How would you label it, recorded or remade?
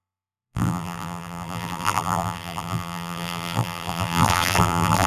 remade